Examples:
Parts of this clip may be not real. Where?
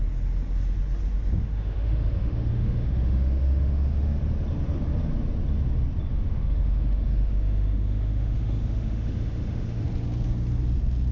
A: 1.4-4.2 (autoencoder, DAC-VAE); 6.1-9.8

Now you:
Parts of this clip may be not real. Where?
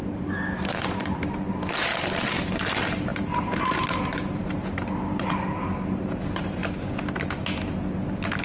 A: 0.0-1.9 (vocoder, BigVGAN v2); 2.4-6.6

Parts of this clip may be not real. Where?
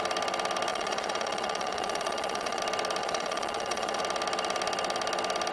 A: 0.7-2.6 (vocoder, Vocos); 3.0-4.0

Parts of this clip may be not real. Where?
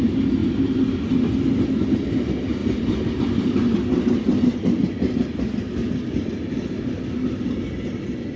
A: 2.6-3.2 (vocoder, BigVGAN v2)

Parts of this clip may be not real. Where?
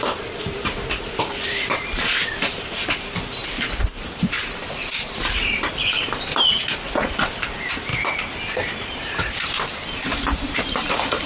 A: 0.0-3.4 (vocoder, BigVGAN v2); 4.1-7.9; 8.4-11.3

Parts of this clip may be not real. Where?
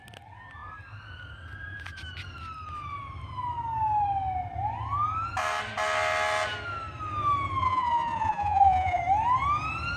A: 7.6-9.0 (vocoder, Vocos)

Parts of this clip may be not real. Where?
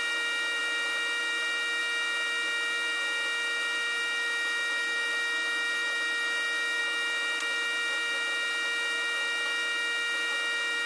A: none